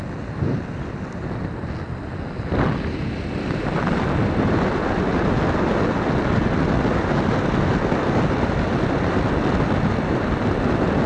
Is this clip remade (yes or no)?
no